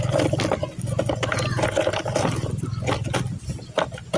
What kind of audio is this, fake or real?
real